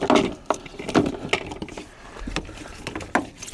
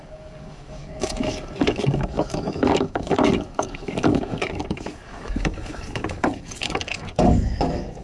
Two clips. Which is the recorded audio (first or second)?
first